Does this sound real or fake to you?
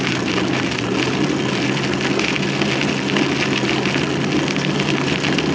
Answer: real